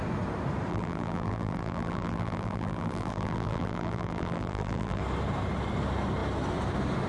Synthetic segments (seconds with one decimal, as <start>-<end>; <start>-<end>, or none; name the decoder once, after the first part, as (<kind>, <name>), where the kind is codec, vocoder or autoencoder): 0.7-5.0 (vocoder, BigVGAN v2)